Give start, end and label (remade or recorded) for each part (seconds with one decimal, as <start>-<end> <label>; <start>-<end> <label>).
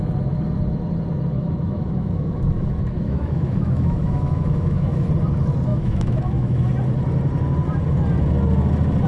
0.0-1.3 recorded; 1.3-5.1 remade; 5.1-5.7 recorded; 5.7-6.7 remade; 6.7-9.1 recorded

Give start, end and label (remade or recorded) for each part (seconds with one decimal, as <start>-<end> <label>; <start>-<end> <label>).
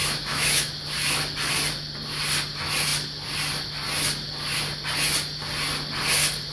0.0-0.7 remade; 0.7-6.5 recorded